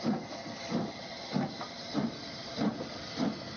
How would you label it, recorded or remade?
recorded